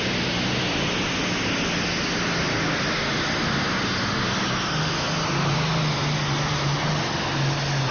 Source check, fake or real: real